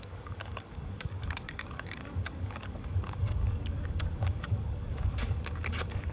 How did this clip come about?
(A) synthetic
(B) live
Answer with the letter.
A